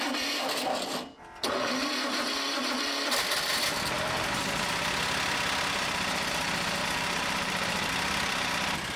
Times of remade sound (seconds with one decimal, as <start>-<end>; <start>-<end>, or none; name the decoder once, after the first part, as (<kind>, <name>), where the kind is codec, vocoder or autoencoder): 6.8-7.9 (vocoder, BigVGAN v2)